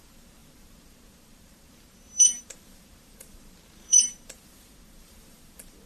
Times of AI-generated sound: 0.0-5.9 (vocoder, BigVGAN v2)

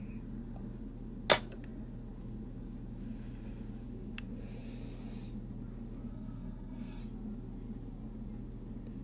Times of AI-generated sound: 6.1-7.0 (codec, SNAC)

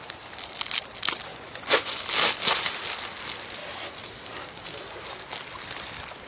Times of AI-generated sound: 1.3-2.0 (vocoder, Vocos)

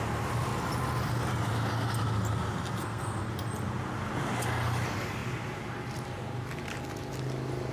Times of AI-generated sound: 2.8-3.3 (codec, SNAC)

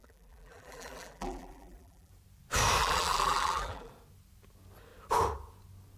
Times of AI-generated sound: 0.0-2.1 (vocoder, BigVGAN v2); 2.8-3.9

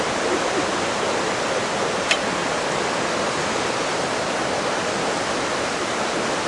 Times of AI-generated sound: none